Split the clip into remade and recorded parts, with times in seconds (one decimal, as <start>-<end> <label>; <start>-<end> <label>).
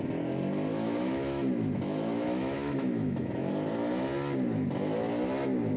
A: 0.0-0.7 recorded; 0.7-3.5 remade; 3.5-5.8 recorded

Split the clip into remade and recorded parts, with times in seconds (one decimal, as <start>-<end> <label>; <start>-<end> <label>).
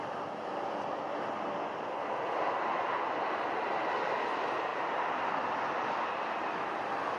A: 0.0-7.2 recorded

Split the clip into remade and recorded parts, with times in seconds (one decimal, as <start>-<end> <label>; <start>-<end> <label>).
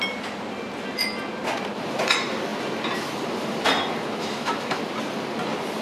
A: 0.0-4.2 recorded; 4.2-4.8 remade; 4.8-5.8 recorded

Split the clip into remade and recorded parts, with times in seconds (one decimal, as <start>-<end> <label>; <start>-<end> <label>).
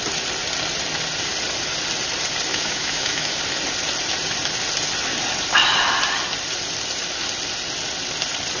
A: 0.0-2.5 recorded; 2.5-3.4 remade; 3.4-8.6 recorded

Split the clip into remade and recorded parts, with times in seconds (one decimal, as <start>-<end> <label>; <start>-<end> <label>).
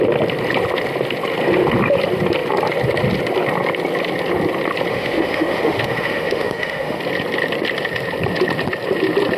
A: 0.0-4.9 recorded; 4.9-7.0 remade; 7.0-9.4 recorded